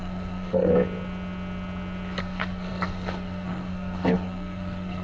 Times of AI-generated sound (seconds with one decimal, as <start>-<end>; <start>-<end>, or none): 0.0-0.7; 2.2-5.0